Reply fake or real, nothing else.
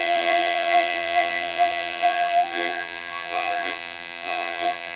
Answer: fake